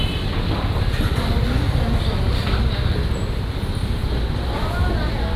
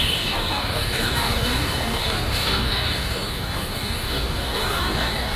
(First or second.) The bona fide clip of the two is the first